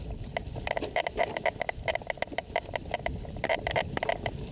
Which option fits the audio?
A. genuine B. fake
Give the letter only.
A